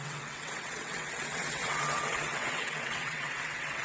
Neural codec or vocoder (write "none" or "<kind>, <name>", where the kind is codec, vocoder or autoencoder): vocoder, WaveNeXt